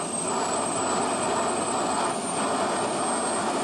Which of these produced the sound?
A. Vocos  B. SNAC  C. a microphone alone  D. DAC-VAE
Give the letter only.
C